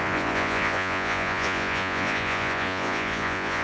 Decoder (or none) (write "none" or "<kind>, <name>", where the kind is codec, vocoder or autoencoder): vocoder, Vocos